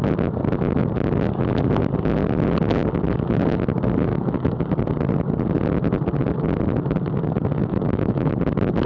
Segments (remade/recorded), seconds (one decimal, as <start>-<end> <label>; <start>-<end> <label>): 0.0-4.1 recorded; 4.1-4.6 remade; 4.6-7.6 recorded; 7.6-8.3 remade; 8.3-8.9 recorded